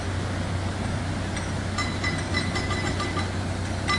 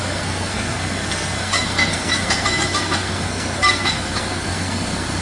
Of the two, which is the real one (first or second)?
first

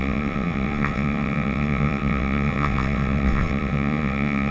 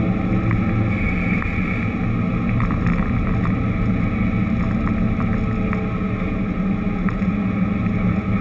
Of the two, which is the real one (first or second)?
second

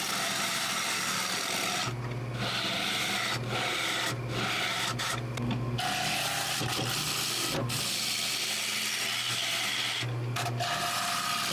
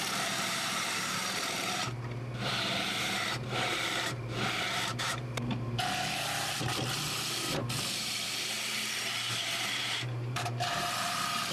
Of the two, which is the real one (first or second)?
first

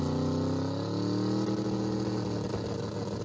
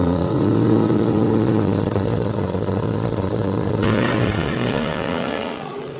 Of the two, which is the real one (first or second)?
first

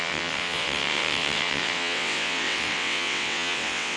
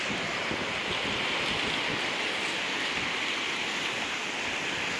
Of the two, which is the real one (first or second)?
second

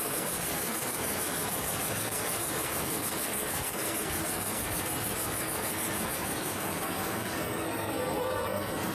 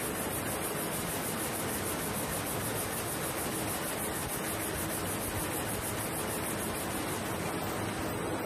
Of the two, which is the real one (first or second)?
second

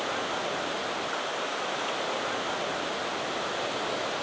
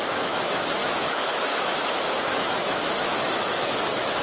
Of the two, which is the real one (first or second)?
first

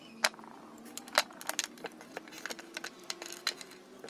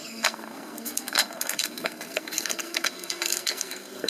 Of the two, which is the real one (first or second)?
first